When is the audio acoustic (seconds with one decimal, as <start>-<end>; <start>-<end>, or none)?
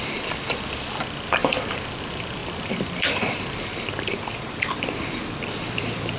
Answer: 1.4-2.0